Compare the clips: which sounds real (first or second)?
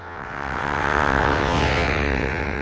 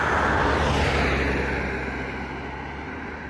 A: second